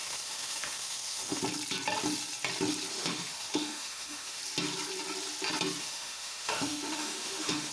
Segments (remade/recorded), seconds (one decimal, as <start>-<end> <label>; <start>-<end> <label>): 0.0-1.4 remade; 1.4-2.9 recorded; 2.9-4.4 remade; 4.4-5.8 recorded; 5.8-7.7 remade